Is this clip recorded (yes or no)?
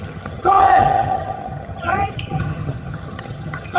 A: no